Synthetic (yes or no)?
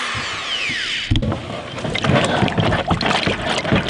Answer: no